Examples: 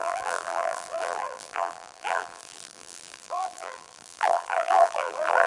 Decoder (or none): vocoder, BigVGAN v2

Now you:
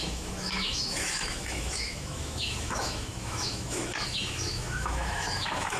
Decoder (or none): autoencoder, DAC-VAE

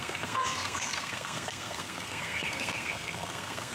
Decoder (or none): codec, SNAC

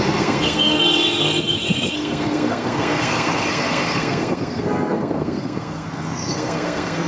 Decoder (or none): codec, SNAC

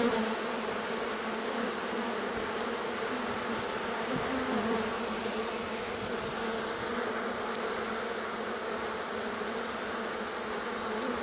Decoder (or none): none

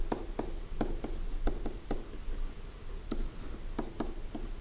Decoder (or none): none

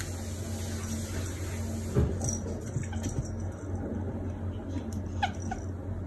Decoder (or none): none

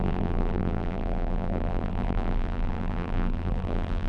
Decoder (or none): vocoder, BigVGAN v2